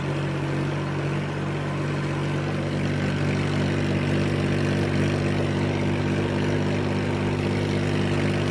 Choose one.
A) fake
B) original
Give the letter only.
B